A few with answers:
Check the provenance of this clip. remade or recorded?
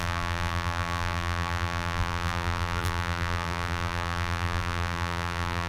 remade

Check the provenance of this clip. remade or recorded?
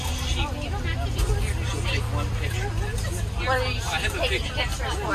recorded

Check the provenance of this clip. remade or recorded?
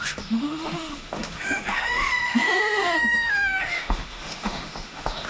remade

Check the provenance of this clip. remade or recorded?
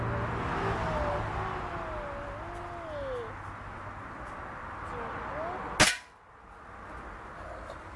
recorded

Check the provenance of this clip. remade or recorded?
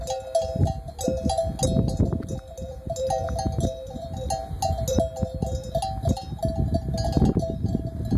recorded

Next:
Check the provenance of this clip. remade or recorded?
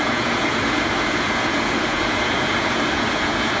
remade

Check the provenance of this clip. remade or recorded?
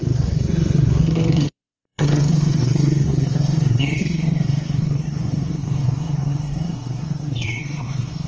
remade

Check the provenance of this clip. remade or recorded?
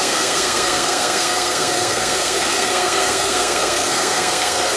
remade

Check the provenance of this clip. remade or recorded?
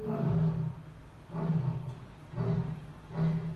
recorded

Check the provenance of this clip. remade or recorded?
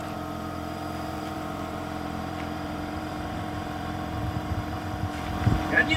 remade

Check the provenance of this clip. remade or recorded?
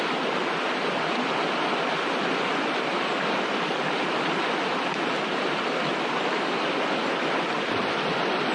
recorded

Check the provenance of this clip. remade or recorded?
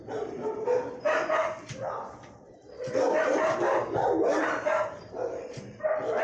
remade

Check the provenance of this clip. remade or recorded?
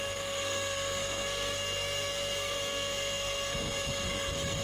remade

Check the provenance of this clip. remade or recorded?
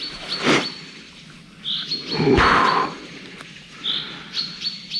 recorded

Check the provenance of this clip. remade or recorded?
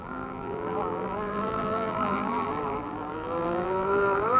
remade